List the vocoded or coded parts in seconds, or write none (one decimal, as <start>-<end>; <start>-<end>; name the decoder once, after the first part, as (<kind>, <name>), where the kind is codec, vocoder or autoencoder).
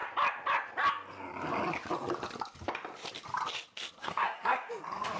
4.0-4.7 (codec, SNAC)